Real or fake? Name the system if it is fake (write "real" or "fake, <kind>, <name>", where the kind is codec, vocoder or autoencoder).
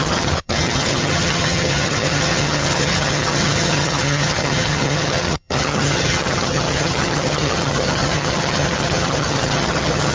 fake, vocoder, HiFi-GAN